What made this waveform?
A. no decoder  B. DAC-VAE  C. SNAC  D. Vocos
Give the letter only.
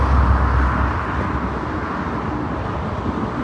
A